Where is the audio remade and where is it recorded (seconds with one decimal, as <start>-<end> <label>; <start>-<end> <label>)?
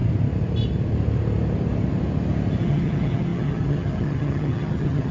0.0-2.6 recorded; 2.6-5.1 remade